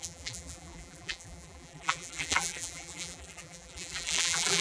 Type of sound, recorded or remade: remade